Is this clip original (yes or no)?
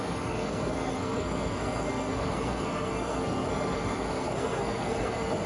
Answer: no